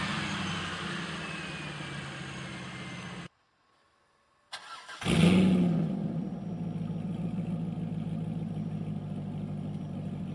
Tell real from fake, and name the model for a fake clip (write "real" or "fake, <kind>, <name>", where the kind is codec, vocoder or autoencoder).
real